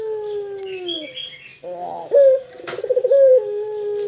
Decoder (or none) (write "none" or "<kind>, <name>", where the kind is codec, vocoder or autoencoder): none